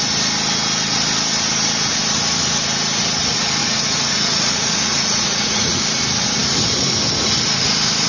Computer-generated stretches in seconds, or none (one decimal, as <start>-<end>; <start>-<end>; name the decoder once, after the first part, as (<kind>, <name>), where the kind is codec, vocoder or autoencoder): 3.6-5.8 (vocoder, Vocos)